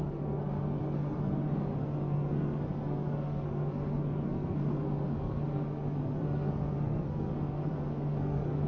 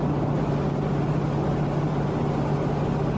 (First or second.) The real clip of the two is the second